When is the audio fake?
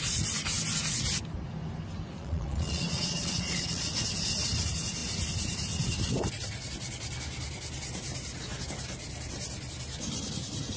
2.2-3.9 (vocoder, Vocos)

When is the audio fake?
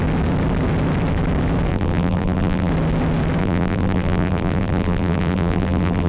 1.7-2.7 (vocoder, BigVGAN v2); 3.4-6.1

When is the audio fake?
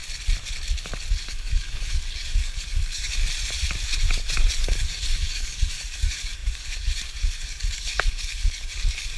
1.1-3.2 (codec, DAC); 4.6-9.2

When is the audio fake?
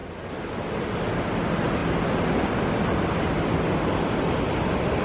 none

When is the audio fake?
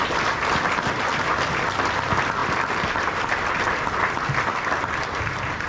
none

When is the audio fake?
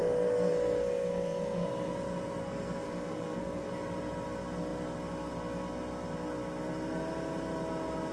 0.0-1.9 (codec, SNAC); 2.4-3.7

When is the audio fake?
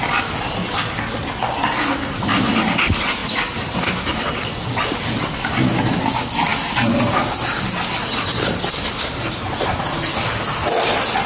none